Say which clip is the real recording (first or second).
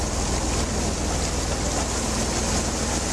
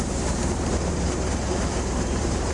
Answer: first